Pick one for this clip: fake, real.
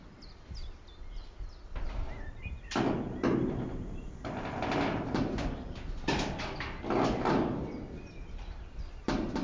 real